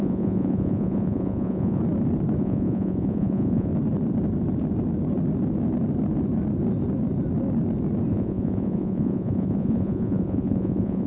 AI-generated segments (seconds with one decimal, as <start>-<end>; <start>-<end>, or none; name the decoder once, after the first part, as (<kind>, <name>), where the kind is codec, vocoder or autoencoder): 0.0-1.8 (vocoder, Vocos); 2.4-3.7; 8.1-11.1